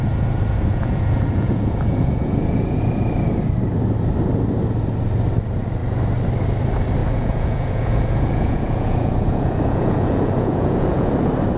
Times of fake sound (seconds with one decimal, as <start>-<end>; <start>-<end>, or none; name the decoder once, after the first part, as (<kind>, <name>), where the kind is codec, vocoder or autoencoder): 0.7-2.8 (vocoder, Vocos); 7.0-11.1